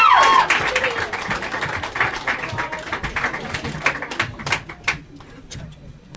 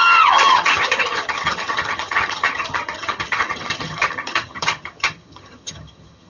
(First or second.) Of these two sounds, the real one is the first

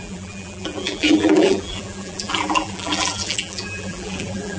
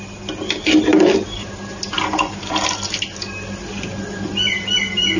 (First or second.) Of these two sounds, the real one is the second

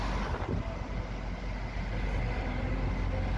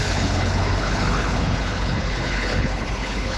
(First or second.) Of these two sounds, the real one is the first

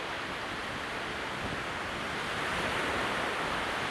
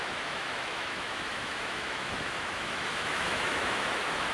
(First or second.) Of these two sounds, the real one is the first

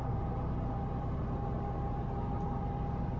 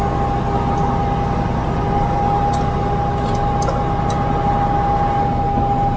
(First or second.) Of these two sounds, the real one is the second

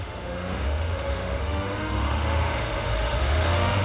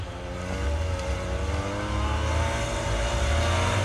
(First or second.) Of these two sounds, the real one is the second